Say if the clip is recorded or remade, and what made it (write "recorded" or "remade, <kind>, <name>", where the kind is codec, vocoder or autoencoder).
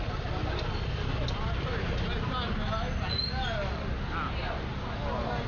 recorded